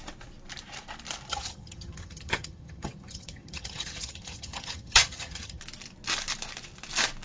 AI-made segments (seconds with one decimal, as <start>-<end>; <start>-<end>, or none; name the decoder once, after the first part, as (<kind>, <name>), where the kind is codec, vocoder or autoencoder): 1.3-5.6 (vocoder, HiFi-GAN)